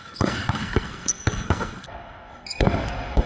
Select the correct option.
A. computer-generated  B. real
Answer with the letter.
A